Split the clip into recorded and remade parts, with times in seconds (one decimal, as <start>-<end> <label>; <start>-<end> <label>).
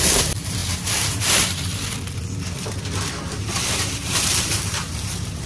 0.0-1.7 remade; 1.7-3.9 recorded; 3.9-5.5 remade